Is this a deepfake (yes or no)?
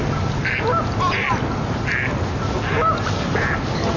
no